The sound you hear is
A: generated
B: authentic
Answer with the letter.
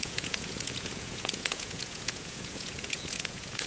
A